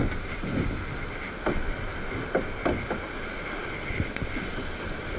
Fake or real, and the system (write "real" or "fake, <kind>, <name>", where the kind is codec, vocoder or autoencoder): real